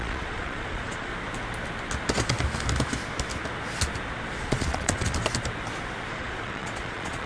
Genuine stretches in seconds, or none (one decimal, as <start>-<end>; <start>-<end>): 1.1-4.4; 5.2-6.1